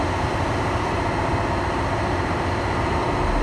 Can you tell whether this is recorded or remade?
recorded